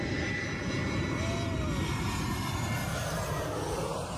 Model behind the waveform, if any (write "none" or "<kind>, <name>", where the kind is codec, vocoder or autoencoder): none